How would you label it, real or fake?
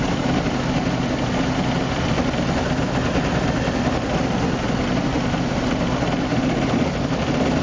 real